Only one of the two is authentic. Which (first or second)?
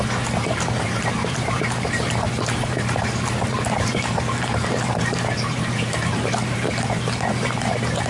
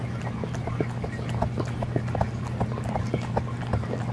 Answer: second